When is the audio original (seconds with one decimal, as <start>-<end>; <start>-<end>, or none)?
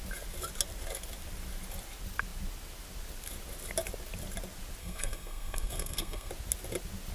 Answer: 0.0-4.8; 6.3-7.1